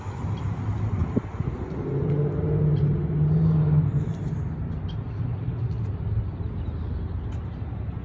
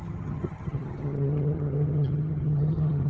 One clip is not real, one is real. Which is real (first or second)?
first